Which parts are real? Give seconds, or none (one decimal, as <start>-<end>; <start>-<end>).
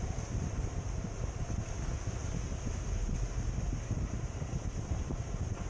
0.0-2.2